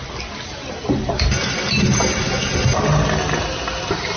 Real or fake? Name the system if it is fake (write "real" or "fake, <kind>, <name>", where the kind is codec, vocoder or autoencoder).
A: real